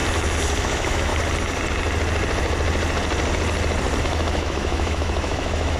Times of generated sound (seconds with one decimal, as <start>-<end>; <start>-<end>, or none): 0.6-1.1; 4.0-5.8